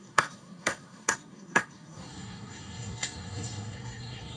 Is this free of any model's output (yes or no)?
no